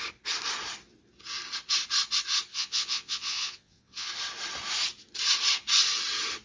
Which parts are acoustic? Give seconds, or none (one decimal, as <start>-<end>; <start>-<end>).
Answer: 0.0-2.5; 4.1-6.4